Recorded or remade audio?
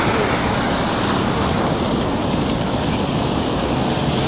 recorded